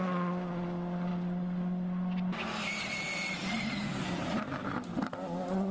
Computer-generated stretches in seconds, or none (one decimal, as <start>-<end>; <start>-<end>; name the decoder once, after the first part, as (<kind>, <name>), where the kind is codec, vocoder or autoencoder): none